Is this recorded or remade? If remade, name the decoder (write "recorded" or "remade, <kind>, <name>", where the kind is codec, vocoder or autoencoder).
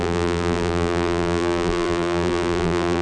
remade, vocoder, BigVGAN v2